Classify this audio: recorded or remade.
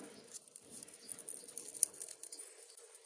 recorded